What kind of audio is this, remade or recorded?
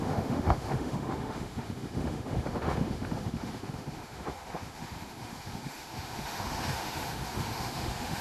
remade